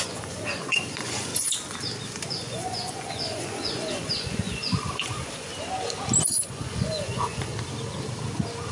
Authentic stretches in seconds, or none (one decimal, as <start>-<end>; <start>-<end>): 1.3-2.3; 5.5-6.3; 7.5-8.7